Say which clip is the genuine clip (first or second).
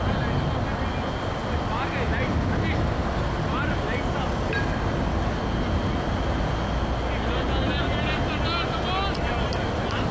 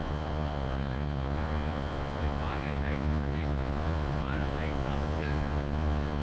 first